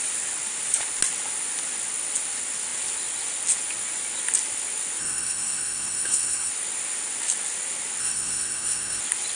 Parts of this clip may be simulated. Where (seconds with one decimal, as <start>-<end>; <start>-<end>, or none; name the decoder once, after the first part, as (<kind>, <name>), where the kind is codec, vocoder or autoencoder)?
5.0-6.5 (codec, SNAC); 8.0-9.0